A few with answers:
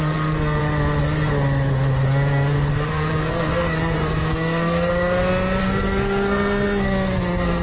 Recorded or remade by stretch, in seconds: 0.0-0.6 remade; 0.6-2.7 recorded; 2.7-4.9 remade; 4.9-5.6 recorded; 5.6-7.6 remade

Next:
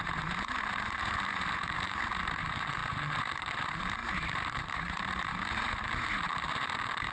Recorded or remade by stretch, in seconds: 0.0-7.1 remade

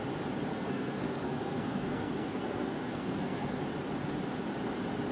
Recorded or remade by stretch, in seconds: 0.0-0.5 recorded; 0.5-3.6 remade; 3.6-5.1 recorded

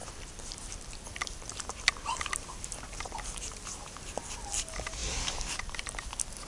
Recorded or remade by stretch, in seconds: 0.0-2.5 remade; 2.5-5.0 recorded; 5.0-6.1 remade; 6.1-6.5 recorded

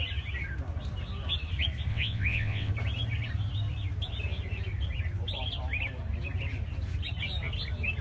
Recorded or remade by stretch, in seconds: 0.0-1.9 recorded; 1.9-2.7 remade; 2.7-8.0 recorded

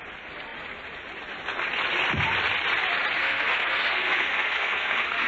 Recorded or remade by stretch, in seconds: 0.0-3.2 recorded; 3.2-5.3 remade

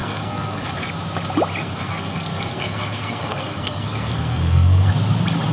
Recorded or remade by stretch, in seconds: 0.0-0.7 remade; 0.7-1.6 recorded; 1.6-4.9 remade; 4.9-5.5 recorded

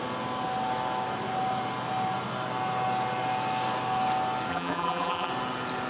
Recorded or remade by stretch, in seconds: 0.0-4.5 recorded; 4.5-5.3 remade; 5.3-5.9 recorded